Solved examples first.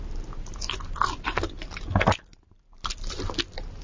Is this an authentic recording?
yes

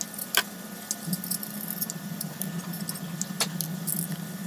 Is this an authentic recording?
yes